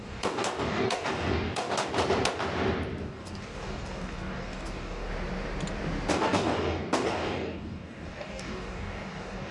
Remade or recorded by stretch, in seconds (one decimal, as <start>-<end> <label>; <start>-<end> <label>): 0.0-1.9 remade; 1.9-3.0 recorded; 3.0-5.1 remade; 5.1-6.1 recorded; 6.1-9.5 remade